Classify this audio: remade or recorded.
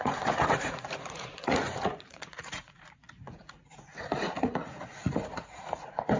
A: remade